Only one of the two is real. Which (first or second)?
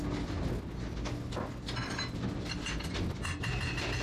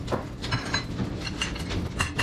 first